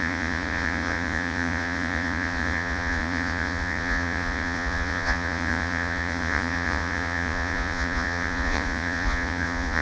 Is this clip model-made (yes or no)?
yes